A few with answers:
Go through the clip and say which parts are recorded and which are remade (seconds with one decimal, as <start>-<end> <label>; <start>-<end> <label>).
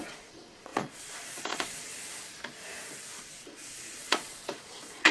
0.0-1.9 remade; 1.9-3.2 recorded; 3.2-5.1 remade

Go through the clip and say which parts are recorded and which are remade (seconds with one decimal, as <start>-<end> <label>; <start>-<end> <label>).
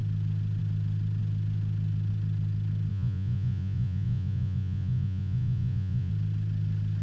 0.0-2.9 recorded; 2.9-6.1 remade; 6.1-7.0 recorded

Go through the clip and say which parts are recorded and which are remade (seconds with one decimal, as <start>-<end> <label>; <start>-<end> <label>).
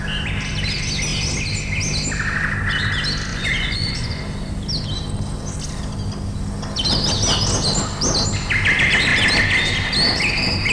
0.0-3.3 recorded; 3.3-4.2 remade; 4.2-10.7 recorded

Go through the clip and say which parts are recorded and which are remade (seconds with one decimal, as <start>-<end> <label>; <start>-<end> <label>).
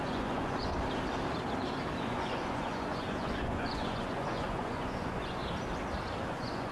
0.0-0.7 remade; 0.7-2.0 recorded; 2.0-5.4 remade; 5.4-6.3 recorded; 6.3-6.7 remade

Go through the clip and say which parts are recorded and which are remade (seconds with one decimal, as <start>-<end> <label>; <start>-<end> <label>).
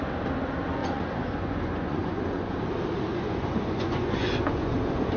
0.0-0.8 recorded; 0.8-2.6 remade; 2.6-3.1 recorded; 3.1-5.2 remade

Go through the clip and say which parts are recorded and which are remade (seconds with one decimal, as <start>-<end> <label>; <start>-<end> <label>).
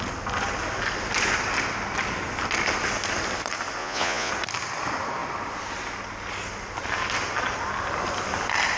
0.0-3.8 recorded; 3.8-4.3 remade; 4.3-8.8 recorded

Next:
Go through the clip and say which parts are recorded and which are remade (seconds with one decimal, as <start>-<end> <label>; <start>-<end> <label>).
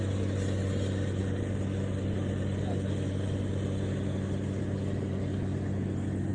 0.0-6.3 recorded